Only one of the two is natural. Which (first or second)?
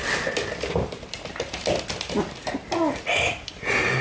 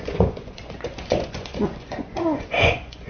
first